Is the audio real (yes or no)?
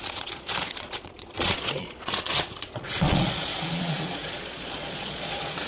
no